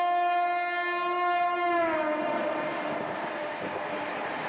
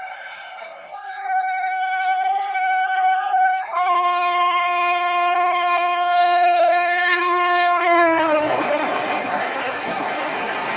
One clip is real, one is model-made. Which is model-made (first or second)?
second